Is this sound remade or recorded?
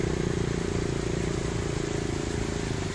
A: recorded